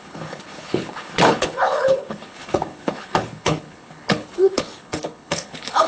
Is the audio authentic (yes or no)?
no